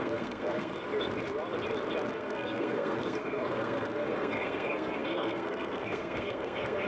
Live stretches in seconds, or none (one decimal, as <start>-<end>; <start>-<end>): 0.7-2.1